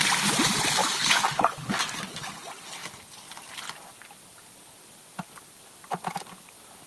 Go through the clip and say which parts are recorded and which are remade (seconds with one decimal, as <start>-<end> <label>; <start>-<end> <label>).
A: 0.0-0.8 recorded; 0.8-2.3 remade; 2.3-6.9 recorded